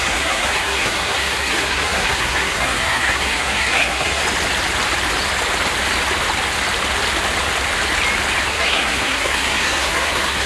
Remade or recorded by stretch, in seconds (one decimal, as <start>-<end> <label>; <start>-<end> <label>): 0.0-4.2 remade; 4.2-8.5 recorded; 8.5-10.5 remade